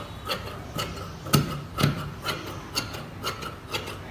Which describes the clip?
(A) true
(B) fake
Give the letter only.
A